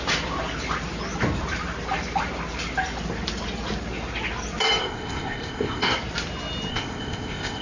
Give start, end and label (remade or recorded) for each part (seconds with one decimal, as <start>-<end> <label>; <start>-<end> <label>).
0.0-4.8 recorded; 4.8-5.9 remade; 5.9-6.7 recorded; 6.7-7.6 remade